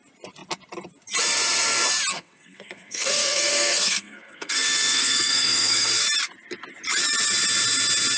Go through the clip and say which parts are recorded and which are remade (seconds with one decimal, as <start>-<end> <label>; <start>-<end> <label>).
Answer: 0.0-2.1 recorded; 2.1-5.9 remade; 5.9-8.2 recorded

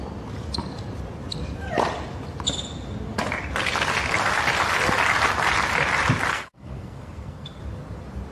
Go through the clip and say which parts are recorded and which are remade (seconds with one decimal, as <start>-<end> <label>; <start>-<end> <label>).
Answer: 0.0-6.3 recorded; 6.3-7.6 remade; 7.6-8.3 recorded

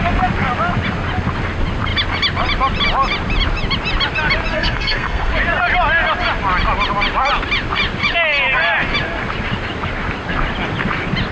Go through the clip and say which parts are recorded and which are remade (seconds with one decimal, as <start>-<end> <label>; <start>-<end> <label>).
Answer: 0.0-4.5 recorded; 4.5-5.3 remade; 5.3-11.3 recorded